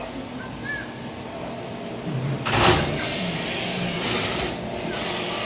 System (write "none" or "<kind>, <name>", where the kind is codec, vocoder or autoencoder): none